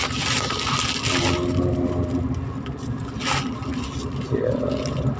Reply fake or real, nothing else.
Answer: real